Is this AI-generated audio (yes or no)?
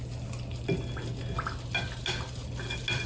no